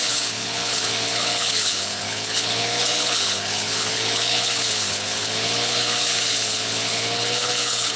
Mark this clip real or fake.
fake